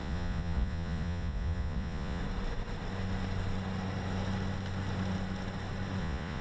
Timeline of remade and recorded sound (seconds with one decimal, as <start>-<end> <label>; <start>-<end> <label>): 0.0-2.2 remade; 2.2-6.0 recorded; 6.0-6.4 remade